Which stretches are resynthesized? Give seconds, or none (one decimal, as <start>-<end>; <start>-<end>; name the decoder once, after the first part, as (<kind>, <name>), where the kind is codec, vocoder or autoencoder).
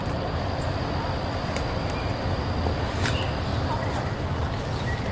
none